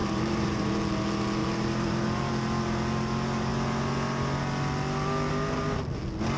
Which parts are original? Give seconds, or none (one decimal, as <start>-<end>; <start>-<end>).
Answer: 0.7-1.4; 2.3-6.4